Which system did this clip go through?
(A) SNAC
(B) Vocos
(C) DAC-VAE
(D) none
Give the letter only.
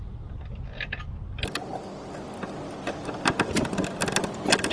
D